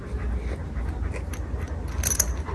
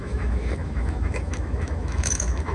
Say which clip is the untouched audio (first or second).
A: first